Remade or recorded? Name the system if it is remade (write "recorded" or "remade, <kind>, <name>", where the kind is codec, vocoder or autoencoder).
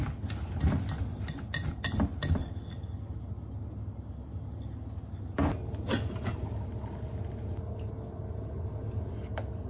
recorded